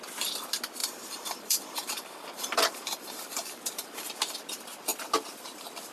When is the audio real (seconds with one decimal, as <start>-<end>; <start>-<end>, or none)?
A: 0.0-0.8; 4.3-5.9